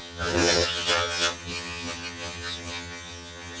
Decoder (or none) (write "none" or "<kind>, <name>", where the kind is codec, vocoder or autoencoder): vocoder, HiFi-GAN